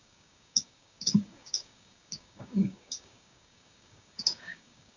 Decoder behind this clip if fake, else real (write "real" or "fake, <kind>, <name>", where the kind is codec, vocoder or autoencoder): fake, codec, DAC